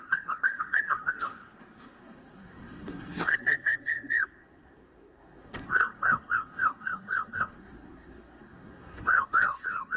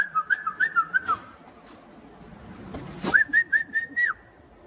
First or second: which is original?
second